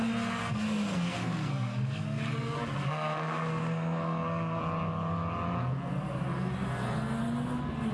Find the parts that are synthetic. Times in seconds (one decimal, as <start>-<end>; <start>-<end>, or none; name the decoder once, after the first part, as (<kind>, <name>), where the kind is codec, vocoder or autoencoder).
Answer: 0.4-4.6 (codec, SNAC)